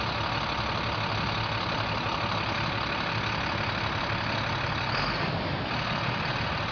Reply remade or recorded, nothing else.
recorded